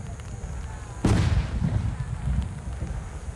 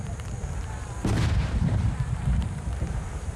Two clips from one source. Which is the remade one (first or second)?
second